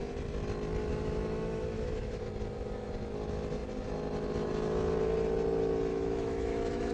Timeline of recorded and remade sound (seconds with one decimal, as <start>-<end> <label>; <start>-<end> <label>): 0.0-0.9 recorded; 0.9-2.2 remade; 2.2-5.9 recorded; 5.9-6.9 remade